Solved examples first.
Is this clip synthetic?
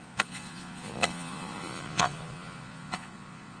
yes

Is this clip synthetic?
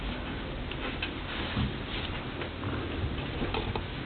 no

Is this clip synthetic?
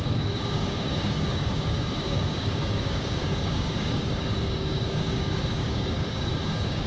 yes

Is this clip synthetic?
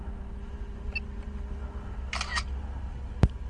no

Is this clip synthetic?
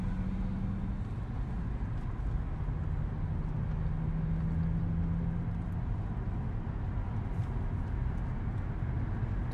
no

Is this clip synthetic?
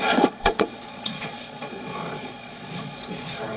yes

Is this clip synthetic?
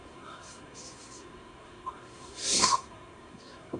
yes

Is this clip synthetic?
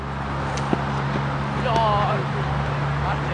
no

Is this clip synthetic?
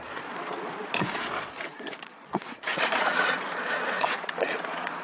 yes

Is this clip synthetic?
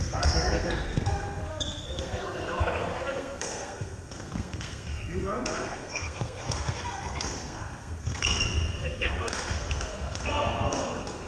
yes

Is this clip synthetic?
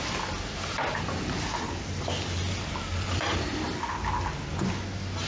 no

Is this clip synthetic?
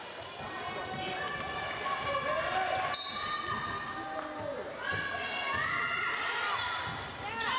no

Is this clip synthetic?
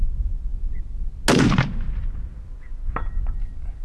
no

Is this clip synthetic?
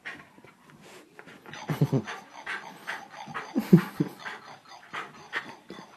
yes